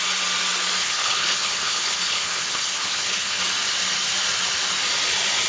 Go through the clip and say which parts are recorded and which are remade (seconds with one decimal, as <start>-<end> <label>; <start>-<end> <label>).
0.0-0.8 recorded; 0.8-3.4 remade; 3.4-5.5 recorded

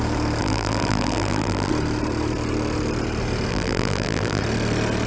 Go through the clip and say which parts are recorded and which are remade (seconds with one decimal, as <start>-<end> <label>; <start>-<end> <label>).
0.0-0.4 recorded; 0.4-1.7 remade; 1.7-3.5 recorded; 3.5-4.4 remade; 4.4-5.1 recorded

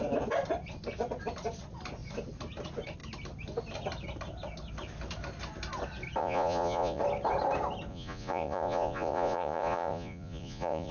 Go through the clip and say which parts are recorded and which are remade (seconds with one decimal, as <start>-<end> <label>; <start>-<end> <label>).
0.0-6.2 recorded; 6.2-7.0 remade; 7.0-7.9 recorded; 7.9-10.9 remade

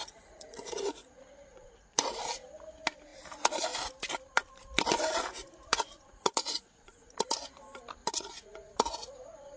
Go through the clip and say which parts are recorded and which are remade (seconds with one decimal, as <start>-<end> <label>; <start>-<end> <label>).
0.0-2.2 remade; 2.2-5.3 recorded; 5.3-7.1 remade; 7.1-8.0 recorded; 8.0-9.6 remade

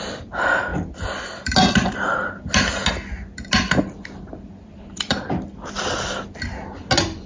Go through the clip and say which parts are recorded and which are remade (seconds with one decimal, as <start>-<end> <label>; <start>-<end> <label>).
0.0-4.3 recorded; 4.3-5.9 remade; 5.9-7.3 recorded